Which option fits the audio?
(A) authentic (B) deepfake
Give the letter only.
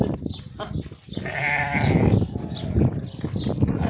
A